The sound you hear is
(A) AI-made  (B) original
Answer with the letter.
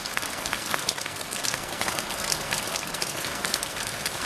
A